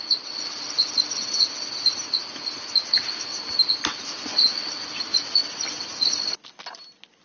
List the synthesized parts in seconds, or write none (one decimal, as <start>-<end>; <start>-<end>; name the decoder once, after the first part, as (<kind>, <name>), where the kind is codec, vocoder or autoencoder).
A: none